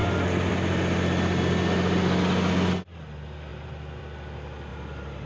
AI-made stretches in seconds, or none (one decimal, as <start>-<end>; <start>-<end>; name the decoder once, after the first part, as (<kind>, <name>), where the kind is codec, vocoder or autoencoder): 3.5-4.0 (vocoder, BigVGAN v2); 4.7-5.3